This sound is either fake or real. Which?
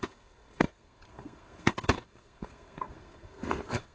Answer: fake